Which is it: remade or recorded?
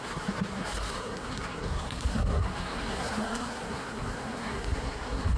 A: remade